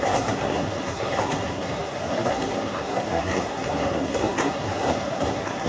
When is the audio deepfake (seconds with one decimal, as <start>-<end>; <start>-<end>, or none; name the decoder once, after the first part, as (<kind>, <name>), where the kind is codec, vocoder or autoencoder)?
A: 0.0-5.7 (codec, SNAC)